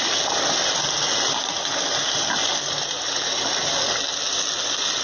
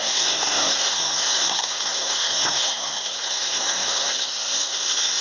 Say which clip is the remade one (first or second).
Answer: second